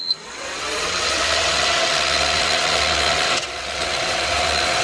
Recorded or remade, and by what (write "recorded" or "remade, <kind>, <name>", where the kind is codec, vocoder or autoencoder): remade, vocoder, WaveNeXt